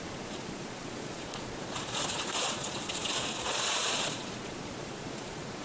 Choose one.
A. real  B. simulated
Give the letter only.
B